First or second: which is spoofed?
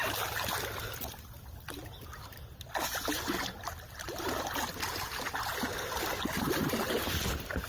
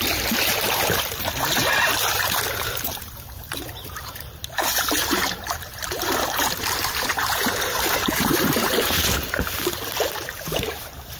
second